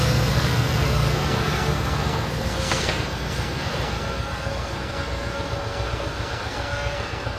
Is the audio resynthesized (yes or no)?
yes